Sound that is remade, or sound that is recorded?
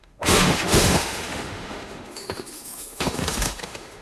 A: remade